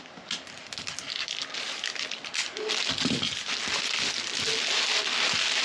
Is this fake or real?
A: real